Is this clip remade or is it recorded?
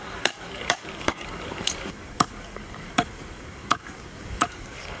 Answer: remade